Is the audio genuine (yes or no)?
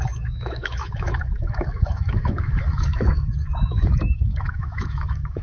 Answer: no